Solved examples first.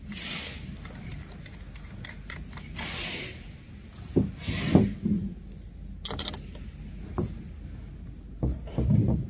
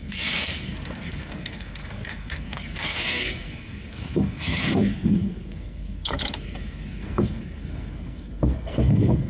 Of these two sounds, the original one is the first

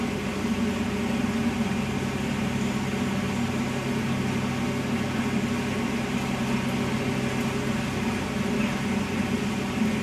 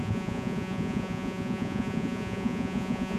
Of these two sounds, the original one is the first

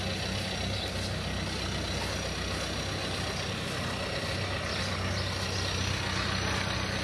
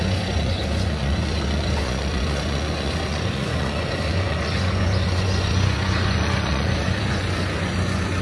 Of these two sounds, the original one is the first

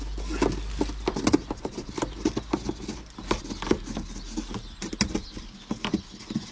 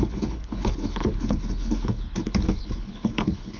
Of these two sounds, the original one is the first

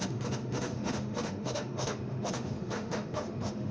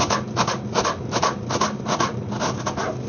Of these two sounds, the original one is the second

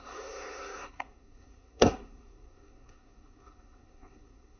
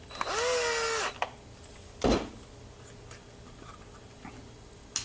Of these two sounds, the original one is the second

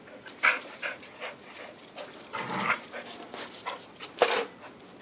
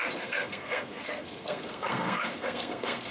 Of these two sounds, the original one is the first